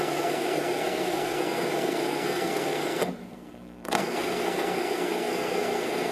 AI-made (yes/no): yes